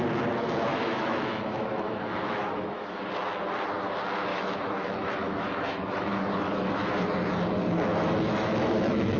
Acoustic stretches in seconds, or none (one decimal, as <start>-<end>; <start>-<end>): 0.0-0.7; 3.0-4.3; 6.9-7.9